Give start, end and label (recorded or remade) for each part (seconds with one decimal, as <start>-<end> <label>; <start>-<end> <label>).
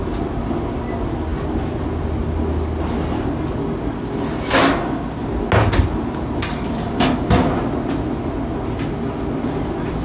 0.0-10.0 recorded